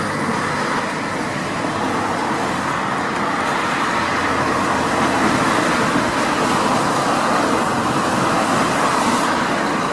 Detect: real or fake real